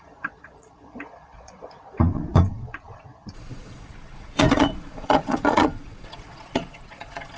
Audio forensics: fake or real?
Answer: fake